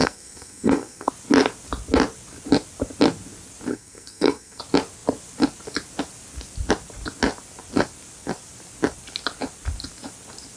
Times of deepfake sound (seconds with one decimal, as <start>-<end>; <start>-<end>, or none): 0.0-1.1; 3.7-4.6